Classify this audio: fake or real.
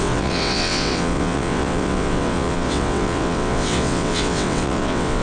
fake